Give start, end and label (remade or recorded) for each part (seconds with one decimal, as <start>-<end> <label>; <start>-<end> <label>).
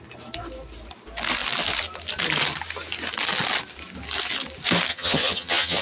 0.0-4.9 recorded; 4.9-5.8 remade